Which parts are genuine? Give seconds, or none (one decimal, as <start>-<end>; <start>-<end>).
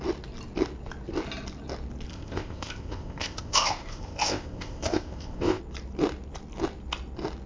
0.0-2.1; 5.6-7.5